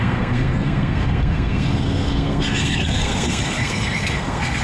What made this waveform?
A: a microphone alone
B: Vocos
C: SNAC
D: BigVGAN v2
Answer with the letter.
C